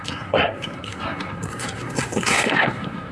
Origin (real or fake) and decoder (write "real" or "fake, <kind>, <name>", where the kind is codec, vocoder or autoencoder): fake, codec, SNAC